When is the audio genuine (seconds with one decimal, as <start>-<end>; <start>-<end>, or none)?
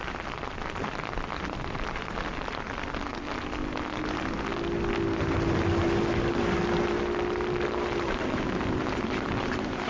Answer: 0.0-9.9